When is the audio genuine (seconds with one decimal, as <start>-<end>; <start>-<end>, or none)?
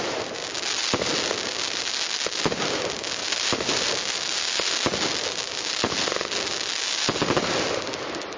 0.0-3.2; 4.2-8.4